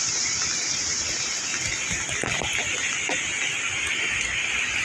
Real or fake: real